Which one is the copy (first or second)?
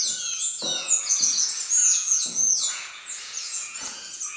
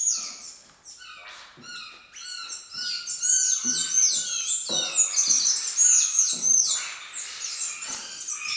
first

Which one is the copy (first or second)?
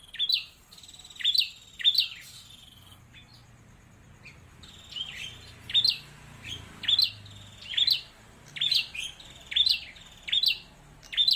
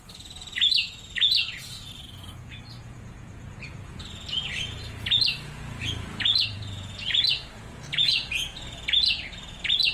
second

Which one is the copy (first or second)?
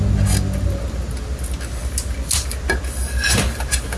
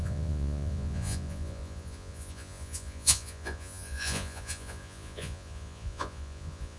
second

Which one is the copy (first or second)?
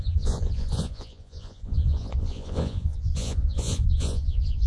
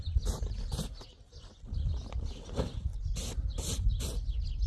first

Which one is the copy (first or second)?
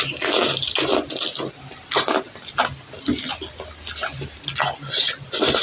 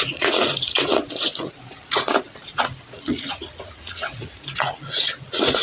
second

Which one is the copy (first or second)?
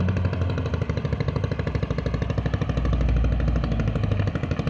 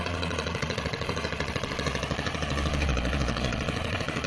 second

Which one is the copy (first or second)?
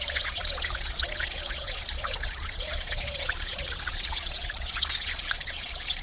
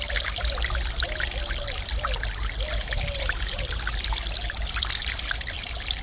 first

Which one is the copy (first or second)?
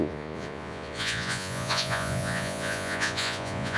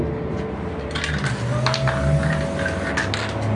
first